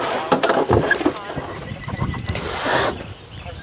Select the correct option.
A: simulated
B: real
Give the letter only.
B